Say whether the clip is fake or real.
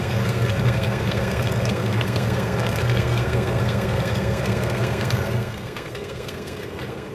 fake